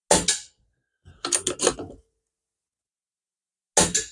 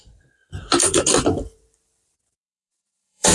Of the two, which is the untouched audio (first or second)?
first